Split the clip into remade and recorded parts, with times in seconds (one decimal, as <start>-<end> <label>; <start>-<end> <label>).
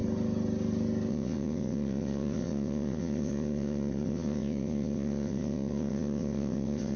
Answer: 0.0-1.1 recorded; 1.1-7.0 remade